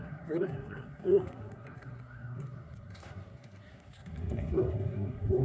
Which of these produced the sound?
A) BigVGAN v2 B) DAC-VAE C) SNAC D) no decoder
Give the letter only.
C